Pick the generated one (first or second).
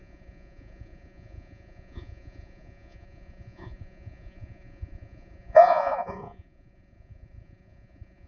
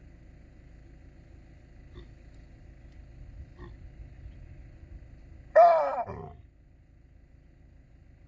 first